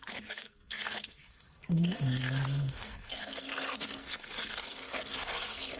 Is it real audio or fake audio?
fake